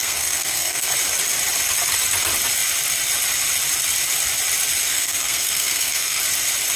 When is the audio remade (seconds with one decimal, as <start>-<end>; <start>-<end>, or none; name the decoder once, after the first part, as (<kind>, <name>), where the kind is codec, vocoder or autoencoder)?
0.0-0.9 (codec, SNAC); 4.9-6.2